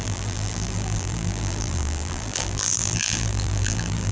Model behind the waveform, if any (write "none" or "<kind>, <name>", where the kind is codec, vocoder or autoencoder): vocoder, BigVGAN v2